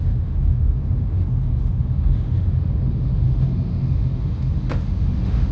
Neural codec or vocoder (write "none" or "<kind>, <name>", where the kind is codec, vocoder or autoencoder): autoencoder, DAC-VAE